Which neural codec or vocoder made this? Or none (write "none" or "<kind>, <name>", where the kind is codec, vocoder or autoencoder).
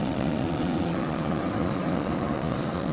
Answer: vocoder, Vocos